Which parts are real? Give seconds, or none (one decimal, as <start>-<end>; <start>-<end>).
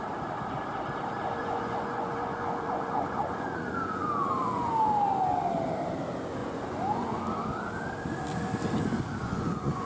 0.0-1.4; 4.7-6.4; 7.2-9.2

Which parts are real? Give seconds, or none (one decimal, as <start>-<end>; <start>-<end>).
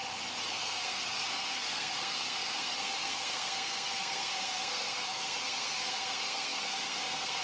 0.0-0.5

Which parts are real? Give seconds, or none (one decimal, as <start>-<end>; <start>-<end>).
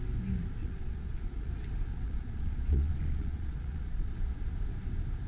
0.0-0.6; 1.5-1.9; 4.1-5.3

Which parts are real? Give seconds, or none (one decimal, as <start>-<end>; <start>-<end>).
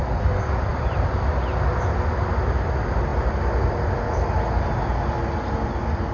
0.0-6.1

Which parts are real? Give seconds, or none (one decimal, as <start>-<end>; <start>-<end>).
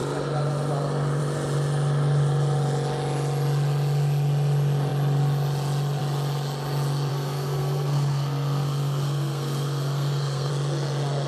0.0-7.1; 10.5-11.3